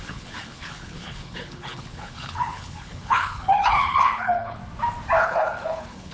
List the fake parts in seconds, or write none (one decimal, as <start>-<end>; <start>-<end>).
0.0-4.6; 5.2-6.1